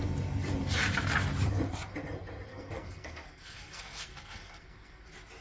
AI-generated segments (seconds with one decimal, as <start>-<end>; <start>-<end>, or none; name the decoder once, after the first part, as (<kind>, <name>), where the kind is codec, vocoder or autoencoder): 2.5-5.0 (codec, SNAC)